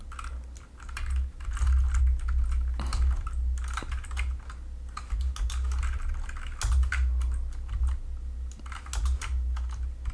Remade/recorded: recorded